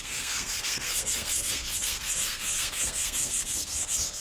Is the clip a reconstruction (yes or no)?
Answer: yes